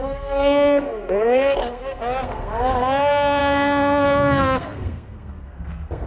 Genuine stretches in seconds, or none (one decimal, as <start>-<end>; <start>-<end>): none

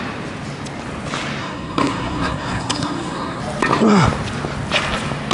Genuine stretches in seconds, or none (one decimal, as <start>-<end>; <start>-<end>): 0.0-1.4; 3.4-5.3